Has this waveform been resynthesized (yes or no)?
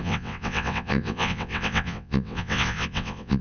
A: yes